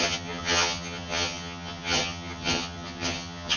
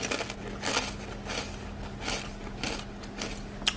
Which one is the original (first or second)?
second